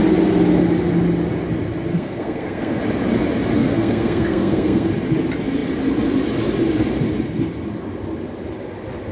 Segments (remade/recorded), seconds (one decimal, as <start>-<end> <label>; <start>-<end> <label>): 0.0-1.9 recorded; 1.9-2.8 remade; 2.8-3.6 recorded; 3.6-4.9 remade; 4.9-9.1 recorded

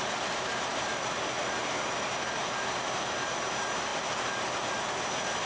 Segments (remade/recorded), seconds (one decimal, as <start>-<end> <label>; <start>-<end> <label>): 0.0-5.5 recorded

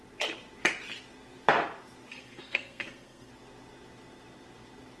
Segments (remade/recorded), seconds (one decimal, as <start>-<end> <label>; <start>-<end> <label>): 0.0-2.1 recorded; 2.1-3.3 remade; 3.3-5.0 recorded